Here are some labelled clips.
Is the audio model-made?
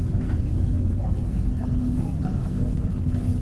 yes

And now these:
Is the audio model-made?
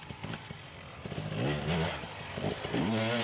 no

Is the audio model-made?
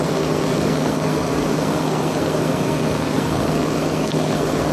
yes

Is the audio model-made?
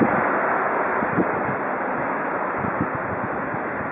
no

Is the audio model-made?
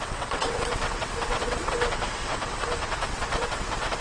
yes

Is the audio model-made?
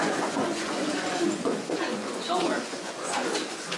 yes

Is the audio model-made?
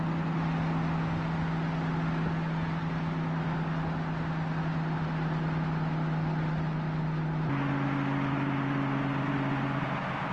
no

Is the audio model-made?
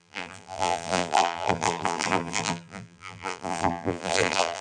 yes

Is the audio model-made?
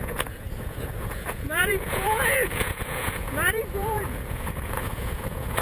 yes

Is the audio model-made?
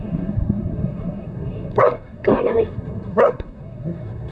yes